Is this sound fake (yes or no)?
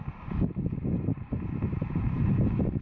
no